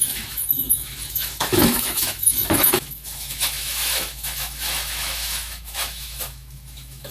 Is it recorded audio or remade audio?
remade